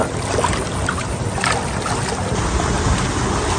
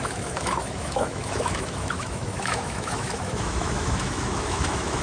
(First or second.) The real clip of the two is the first